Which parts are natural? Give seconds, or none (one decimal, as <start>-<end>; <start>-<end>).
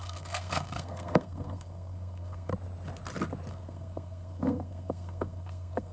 2.5-3.5